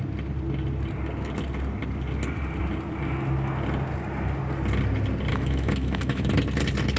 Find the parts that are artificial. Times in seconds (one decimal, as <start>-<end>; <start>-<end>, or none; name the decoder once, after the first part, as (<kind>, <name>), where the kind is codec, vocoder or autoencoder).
5.3-6.3 (autoencoder, DAC-VAE)